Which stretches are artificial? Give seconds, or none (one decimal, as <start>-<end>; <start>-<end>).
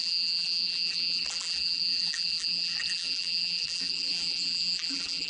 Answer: 0.0-5.3